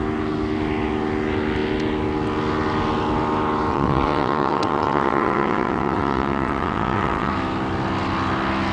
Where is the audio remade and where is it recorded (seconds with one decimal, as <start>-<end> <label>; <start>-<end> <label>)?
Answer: 0.0-3.7 recorded; 3.7-7.3 remade; 7.3-8.7 recorded